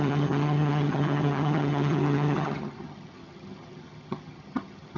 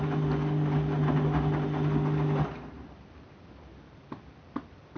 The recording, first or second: second